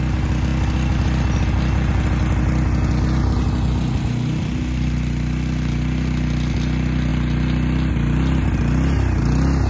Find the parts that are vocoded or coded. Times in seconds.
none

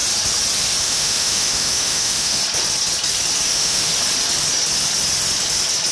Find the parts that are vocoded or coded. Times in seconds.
0.8-2.4 (autoencoder, DAC-VAE); 3.5-3.9

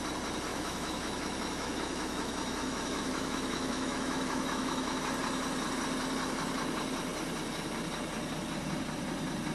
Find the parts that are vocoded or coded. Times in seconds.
0.5-5.0 (autoencoder, DAC-VAE)

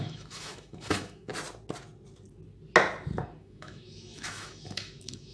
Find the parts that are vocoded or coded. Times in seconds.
0.0-1.3 (autoencoder, DAC-VAE); 3.4-5.3

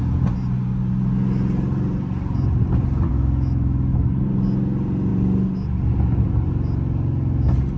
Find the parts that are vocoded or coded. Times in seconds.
3.1-4.1 (autoencoder, DAC-VAE)

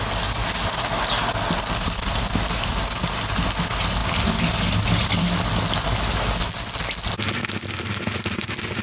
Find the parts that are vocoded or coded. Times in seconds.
none

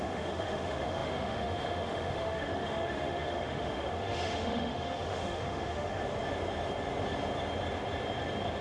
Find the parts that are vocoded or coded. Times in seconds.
0.0-6.0 (autoencoder, DAC-VAE)

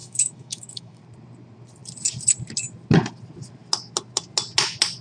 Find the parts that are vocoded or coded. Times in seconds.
0.0-1.0 (autoencoder, DAC-VAE)